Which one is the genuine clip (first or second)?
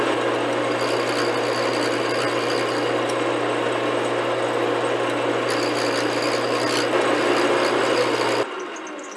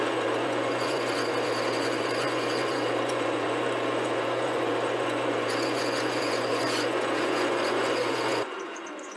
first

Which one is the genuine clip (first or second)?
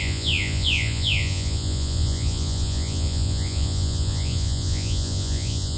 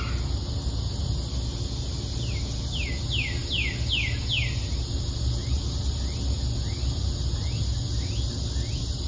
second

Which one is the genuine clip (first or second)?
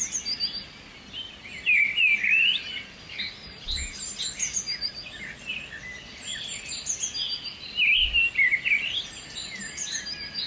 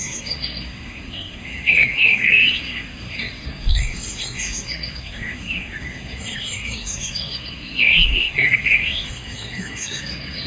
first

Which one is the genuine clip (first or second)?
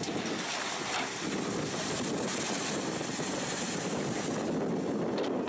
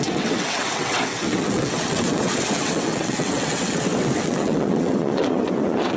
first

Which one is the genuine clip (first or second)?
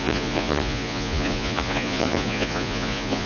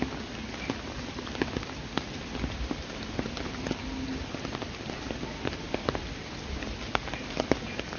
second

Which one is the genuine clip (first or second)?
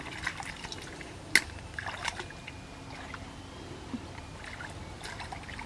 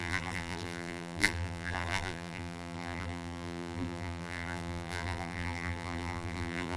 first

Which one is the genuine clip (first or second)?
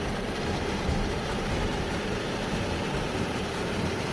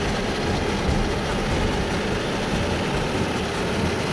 second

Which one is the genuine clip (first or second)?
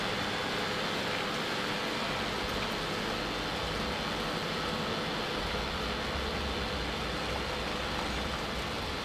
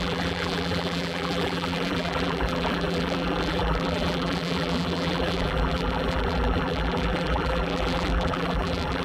first